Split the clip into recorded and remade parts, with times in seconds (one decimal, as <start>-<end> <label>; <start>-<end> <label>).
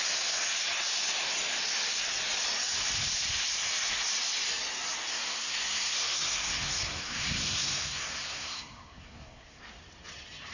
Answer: 0.0-5.1 recorded; 5.1-9.6 remade; 9.6-10.5 recorded